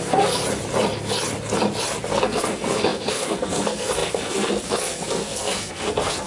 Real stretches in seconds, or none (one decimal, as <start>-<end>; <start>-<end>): 0.4-2.1